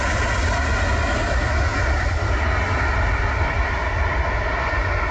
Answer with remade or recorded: recorded